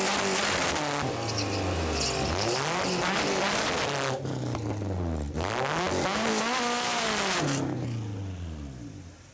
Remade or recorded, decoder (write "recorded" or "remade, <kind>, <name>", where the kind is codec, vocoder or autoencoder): recorded